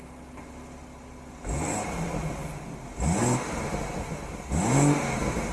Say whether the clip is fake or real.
real